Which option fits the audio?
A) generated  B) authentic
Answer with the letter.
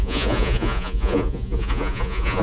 A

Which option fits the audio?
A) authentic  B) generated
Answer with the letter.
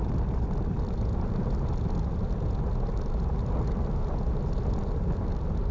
A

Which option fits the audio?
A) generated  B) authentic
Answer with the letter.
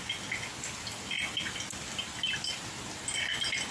B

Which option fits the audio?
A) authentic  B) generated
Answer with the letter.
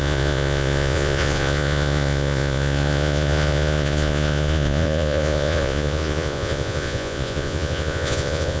B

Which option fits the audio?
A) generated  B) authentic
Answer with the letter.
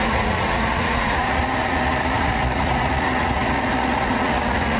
A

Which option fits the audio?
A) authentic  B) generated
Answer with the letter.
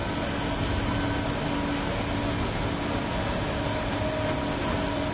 A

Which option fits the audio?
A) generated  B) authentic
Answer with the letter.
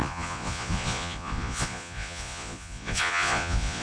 A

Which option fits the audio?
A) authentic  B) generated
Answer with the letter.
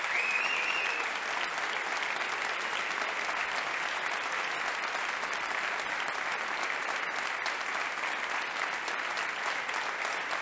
A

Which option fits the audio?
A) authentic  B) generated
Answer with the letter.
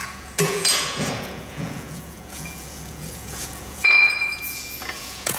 B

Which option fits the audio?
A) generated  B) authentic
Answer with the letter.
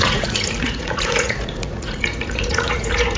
A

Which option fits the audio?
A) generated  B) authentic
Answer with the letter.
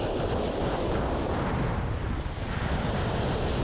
B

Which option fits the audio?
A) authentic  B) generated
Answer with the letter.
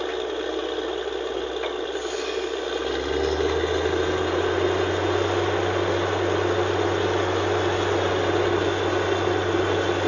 A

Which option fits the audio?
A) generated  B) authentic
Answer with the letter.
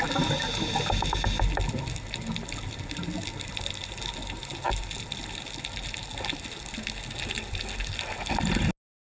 B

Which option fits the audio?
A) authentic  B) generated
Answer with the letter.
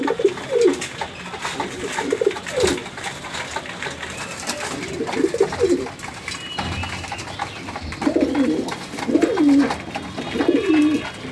A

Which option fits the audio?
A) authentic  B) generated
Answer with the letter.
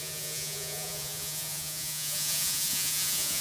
B